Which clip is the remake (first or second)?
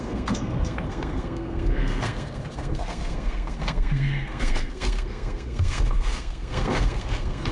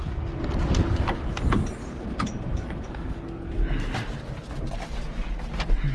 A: first